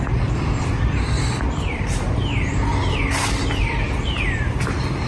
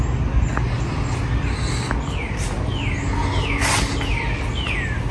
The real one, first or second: second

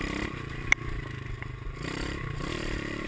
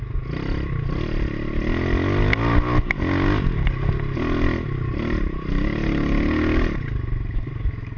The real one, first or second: second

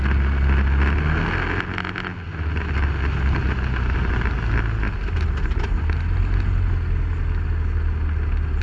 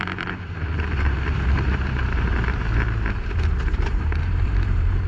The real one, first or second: first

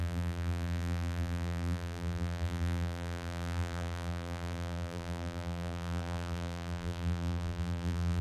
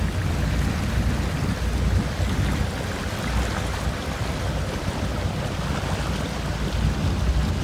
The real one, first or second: second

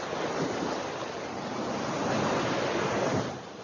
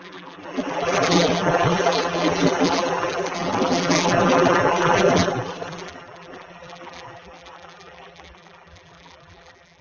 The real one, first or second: first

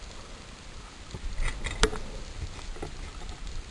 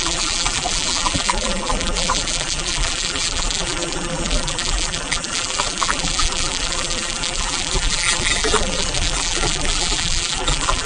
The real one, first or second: first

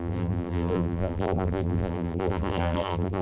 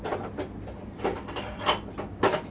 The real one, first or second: second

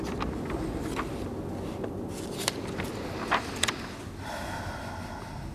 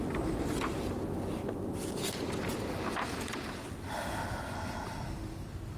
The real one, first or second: first